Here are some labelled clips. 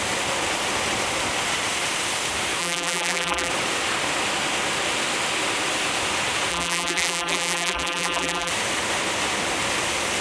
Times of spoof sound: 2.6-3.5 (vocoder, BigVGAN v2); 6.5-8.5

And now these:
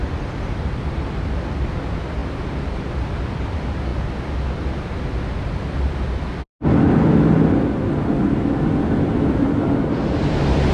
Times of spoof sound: 0.0-2.2 (vocoder, BigVGAN v2); 2.7-3.9; 8.9-10.7

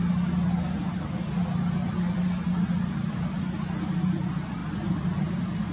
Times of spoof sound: 3.4-5.7 (vocoder, BigVGAN v2)